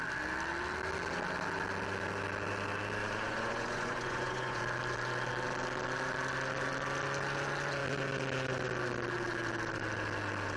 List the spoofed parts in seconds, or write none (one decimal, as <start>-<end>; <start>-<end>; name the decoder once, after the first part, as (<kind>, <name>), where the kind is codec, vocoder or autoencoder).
3.0-4.6 (vocoder, Vocos)